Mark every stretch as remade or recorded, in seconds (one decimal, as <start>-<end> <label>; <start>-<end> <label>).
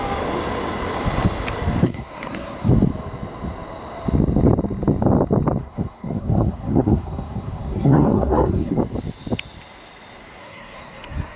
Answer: 0.0-1.8 recorded; 1.8-2.7 remade; 2.7-5.6 recorded; 5.6-8.8 remade; 8.8-10.4 recorded; 10.4-11.4 remade